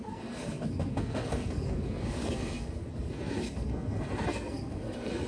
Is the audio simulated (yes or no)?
yes